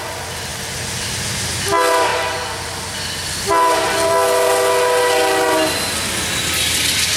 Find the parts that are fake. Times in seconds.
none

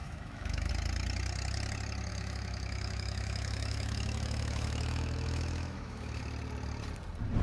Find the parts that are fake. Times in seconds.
0.0-0.7; 2.1-6.2

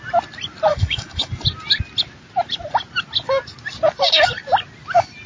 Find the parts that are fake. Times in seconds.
0.7-1.3

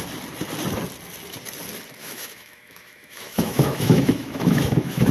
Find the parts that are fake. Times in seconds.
2.0-5.1

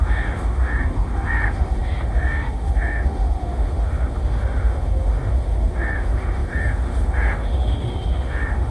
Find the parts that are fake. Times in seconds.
0.0-8.7

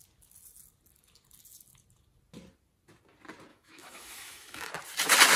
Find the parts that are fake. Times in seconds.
3.5-4.7

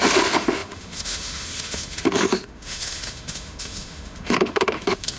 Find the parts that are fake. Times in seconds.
0.0-5.2